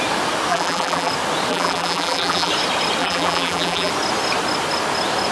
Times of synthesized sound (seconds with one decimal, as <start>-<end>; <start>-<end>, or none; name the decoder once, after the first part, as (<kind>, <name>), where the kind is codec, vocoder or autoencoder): 0.5-1.1 (vocoder, BigVGAN v2); 1.5-2.5; 3.0-3.9